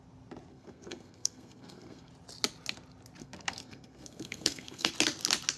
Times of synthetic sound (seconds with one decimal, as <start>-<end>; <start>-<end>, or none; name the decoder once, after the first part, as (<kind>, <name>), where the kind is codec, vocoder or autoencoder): 0.5-2.1 (codec, SNAC); 3.2-4.9